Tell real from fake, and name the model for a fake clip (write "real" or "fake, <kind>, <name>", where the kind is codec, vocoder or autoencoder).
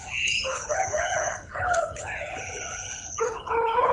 fake, codec, HILCodec